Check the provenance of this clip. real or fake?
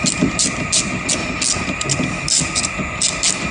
real